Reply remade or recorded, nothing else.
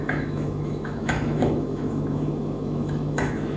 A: remade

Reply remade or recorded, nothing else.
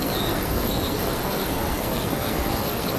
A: remade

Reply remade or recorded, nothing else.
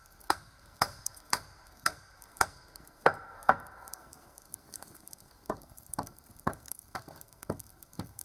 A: remade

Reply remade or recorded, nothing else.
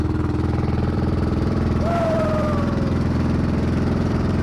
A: remade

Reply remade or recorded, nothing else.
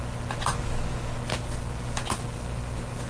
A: recorded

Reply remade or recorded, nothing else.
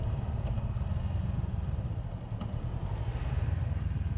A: recorded